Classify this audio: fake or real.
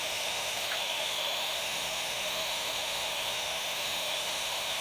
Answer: fake